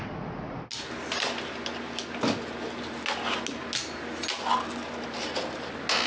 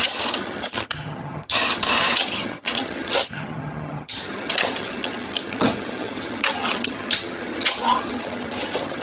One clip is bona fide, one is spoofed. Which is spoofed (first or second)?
second